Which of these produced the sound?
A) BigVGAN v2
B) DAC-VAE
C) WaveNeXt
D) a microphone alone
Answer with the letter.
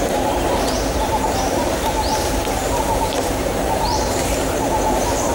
A